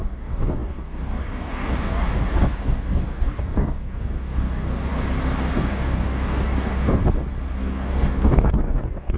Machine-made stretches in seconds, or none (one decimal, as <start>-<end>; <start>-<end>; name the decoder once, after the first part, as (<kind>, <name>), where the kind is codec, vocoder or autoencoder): 0.0-4.9 (codec, DAC); 5.7-7.0; 7.6-9.2